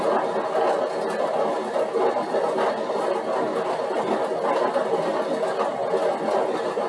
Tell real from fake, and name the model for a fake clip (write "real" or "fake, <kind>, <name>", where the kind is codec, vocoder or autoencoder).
real